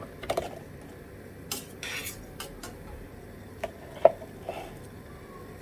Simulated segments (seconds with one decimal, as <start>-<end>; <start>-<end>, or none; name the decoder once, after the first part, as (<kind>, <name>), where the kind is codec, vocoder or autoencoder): none